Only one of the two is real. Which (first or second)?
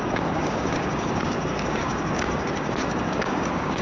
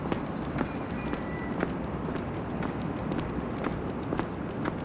second